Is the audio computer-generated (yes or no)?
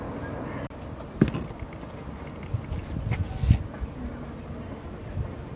no